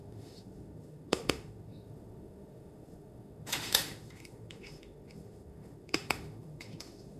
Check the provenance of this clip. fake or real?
fake